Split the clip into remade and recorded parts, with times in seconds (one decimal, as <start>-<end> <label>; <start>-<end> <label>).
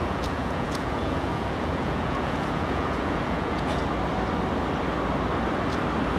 0.0-3.8 remade; 3.8-6.2 recorded